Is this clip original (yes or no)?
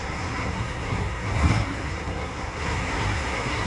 no